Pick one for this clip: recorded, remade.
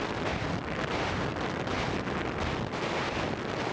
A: recorded